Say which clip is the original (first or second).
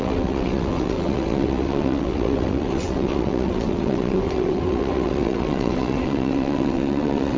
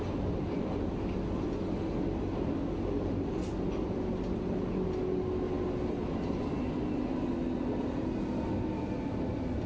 second